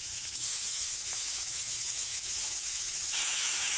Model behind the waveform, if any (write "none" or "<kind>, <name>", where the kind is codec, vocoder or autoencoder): autoencoder, DAC-VAE